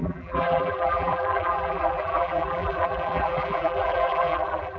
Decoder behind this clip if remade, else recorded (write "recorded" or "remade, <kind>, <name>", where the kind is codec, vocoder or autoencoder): remade, vocoder, BigVGAN v2